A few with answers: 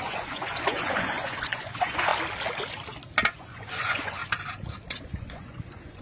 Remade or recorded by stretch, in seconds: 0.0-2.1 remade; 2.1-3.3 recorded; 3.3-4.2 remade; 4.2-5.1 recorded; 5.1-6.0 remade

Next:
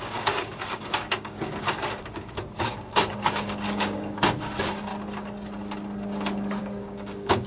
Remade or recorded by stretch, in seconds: 0.0-4.9 remade; 4.9-6.6 recorded; 6.6-7.5 remade

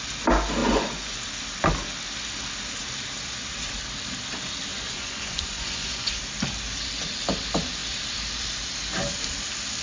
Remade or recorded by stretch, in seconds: 0.0-0.6 recorded; 0.6-1.2 remade; 1.2-4.7 recorded; 4.7-6.2 remade; 6.2-9.8 recorded

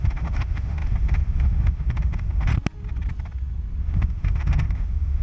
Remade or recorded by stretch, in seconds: 0.0-2.5 remade; 2.5-3.8 recorded; 3.8-5.2 remade

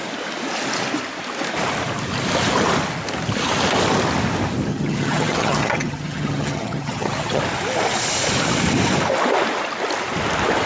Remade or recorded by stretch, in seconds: 0.0-4.7 recorded; 4.7-7.4 remade; 7.4-10.7 recorded

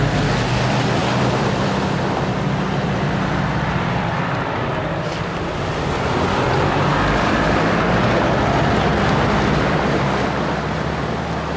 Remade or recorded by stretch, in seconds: 0.0-1.0 recorded; 1.0-6.0 remade; 6.0-8.9 recorded; 8.9-9.8 remade; 9.8-11.6 recorded

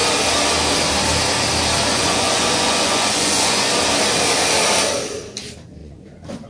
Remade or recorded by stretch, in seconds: 0.0-1.9 recorded; 1.9-3.7 remade; 3.7-5.8 recorded; 5.8-6.5 remade

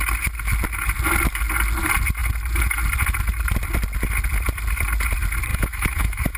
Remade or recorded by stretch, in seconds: 0.0-5.5 recorded; 5.5-6.4 remade